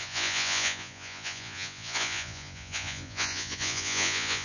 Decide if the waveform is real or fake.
fake